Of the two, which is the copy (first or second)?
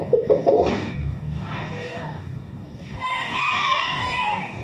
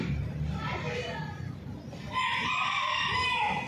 first